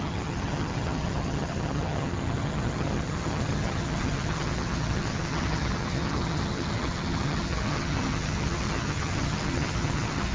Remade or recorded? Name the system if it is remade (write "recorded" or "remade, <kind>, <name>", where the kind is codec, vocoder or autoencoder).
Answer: remade, vocoder, HiFi-GAN